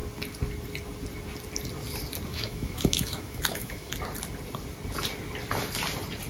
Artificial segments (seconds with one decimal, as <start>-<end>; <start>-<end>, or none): 2.3-3.9